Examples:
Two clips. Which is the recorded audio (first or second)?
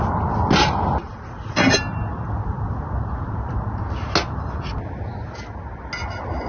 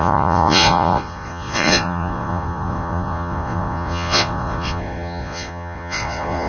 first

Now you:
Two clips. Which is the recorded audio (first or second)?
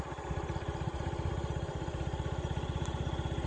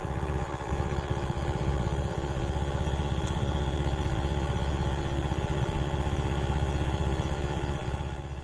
first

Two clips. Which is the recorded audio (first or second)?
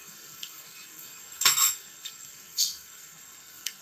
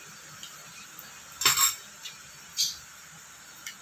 second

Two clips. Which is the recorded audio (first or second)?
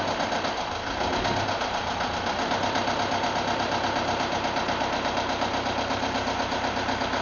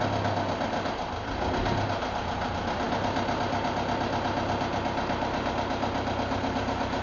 second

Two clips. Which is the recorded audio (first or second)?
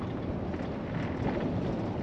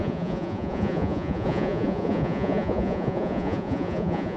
first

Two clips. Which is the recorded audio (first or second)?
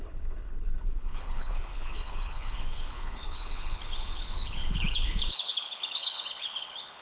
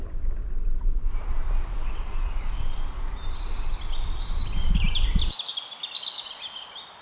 second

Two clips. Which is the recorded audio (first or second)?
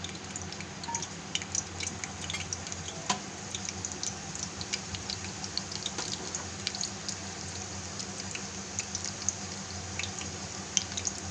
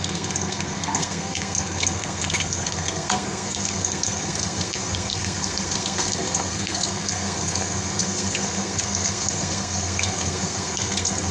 first